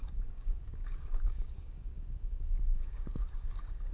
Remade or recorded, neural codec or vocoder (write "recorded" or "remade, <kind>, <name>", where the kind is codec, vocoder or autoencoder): remade, codec, DAC